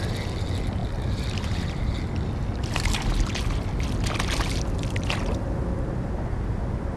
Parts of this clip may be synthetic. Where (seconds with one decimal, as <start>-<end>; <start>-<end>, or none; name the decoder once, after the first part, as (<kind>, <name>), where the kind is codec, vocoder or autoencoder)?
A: none